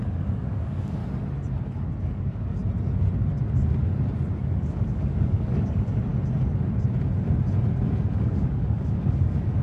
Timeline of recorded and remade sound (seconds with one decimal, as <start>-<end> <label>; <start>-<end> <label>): 0.0-1.0 remade; 1.0-2.0 recorded; 2.0-2.6 remade; 2.6-4.4 recorded; 4.4-6.1 remade; 6.1-8.1 recorded; 8.1-9.6 remade

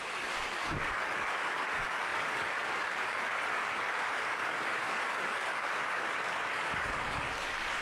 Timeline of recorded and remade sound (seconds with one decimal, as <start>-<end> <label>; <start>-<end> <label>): 0.0-7.8 remade

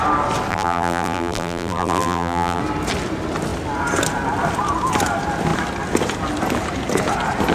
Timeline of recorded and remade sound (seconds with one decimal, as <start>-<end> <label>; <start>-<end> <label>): 0.0-0.5 recorded; 0.5-2.6 remade; 2.6-7.5 recorded

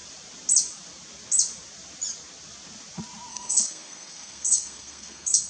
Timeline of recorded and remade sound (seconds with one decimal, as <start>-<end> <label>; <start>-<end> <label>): 0.0-3.3 recorded; 3.3-5.5 remade

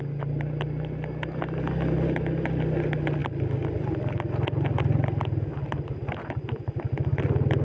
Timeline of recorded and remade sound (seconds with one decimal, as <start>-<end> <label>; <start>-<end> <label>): 0.0-7.6 recorded

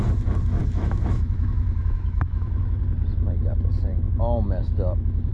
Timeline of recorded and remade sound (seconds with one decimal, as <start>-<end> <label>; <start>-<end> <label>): 0.0-0.6 recorded; 0.6-2.8 remade; 2.8-3.9 recorded; 3.9-5.3 remade

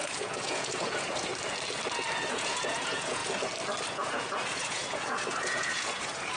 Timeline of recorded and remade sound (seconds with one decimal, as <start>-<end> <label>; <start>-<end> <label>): 0.0-1.3 remade; 1.3-2.3 recorded; 2.3-3.2 remade; 3.2-3.9 recorded; 3.9-6.4 remade